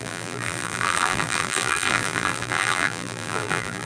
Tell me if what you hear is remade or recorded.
remade